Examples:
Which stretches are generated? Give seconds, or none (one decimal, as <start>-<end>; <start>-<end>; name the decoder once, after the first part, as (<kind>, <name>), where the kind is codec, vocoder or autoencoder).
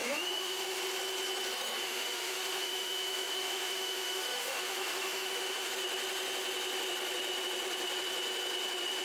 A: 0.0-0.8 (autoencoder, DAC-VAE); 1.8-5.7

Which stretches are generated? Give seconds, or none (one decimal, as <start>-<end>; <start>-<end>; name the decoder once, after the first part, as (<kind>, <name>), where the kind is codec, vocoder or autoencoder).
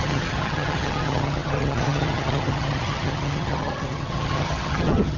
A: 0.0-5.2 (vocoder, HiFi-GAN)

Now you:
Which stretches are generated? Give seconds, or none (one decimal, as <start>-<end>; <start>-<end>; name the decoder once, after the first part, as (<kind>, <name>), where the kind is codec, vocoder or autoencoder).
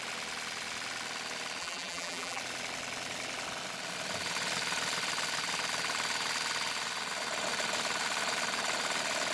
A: 1.6-2.4 (vocoder, BigVGAN v2)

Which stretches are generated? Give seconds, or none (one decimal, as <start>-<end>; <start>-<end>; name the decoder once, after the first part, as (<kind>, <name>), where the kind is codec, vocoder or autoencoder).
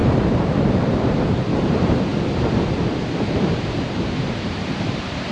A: 1.6-2.1 (vocoder, BigVGAN v2); 3.6-5.3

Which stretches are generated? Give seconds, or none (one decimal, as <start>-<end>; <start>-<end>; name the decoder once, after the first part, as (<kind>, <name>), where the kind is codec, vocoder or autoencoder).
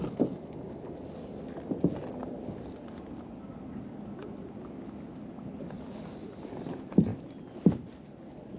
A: none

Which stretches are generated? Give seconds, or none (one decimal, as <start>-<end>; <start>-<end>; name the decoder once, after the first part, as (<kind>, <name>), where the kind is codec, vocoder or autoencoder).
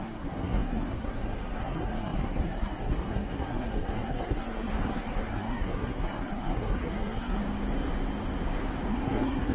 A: 0.0-7.4 (codec, SNAC); 8.9-9.5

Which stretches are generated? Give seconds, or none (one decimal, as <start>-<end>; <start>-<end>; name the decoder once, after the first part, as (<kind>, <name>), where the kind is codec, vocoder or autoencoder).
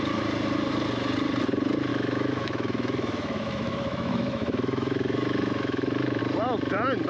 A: 1.9-6.2 (autoencoder, DAC-VAE)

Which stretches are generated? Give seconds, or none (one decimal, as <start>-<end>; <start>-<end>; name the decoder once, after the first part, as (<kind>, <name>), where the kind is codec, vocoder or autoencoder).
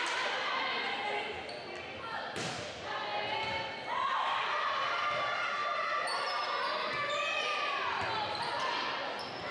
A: 5.6-6.5 (vocoder, BigVGAN v2)